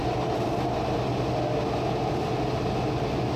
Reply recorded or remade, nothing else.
recorded